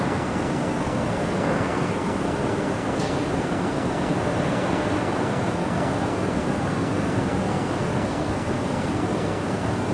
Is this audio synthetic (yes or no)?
yes